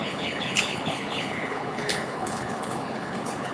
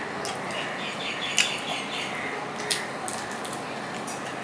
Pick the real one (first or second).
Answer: second